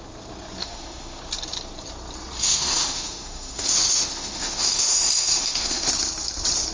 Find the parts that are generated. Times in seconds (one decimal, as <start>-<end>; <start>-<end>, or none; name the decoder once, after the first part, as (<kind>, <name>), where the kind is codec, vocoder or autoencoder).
0.6-1.2 (autoencoder, DAC-VAE); 2.4-5.9